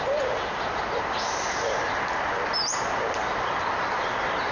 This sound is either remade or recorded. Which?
recorded